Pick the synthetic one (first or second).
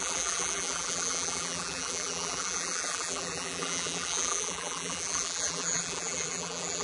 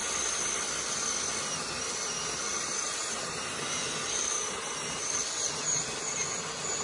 first